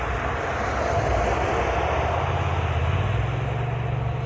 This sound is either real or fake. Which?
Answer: real